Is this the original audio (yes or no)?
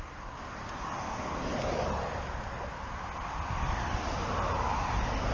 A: yes